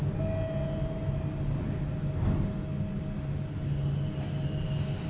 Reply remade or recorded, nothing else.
recorded